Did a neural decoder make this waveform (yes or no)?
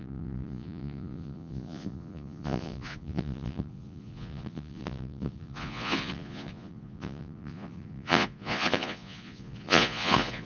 yes